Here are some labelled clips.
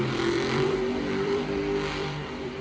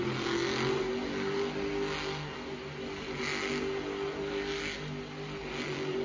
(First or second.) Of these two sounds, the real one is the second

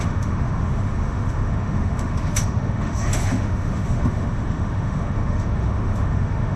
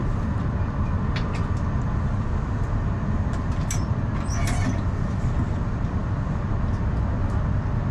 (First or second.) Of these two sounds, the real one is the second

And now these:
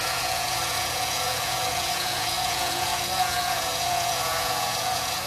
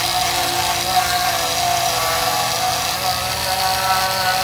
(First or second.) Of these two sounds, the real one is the second